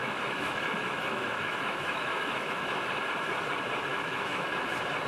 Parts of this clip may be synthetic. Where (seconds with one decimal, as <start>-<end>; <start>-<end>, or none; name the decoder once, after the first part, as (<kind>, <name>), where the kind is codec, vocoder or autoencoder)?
0.0-2.7 (autoencoder, DAC-VAE); 3.9-4.6